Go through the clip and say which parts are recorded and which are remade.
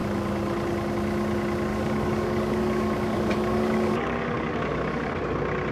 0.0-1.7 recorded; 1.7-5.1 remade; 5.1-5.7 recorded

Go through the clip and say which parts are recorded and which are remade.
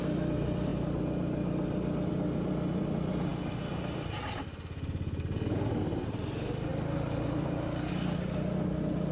0.0-9.1 recorded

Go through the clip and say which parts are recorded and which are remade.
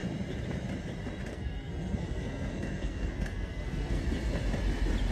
0.0-1.3 recorded; 1.3-4.0 remade; 4.0-5.1 recorded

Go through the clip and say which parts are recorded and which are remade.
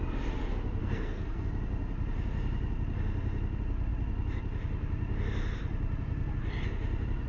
0.0-0.8 recorded; 0.8-1.5 remade; 1.5-7.3 recorded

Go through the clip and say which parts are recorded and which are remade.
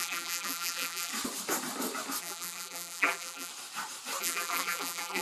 0.0-1.1 remade; 1.1-2.2 recorded; 2.2-3.5 remade; 3.5-4.2 recorded; 4.2-5.2 remade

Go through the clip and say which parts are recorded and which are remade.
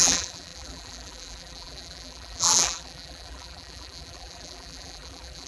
0.0-5.5 remade